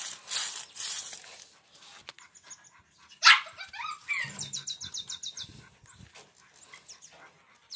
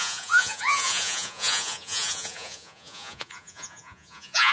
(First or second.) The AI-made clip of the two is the second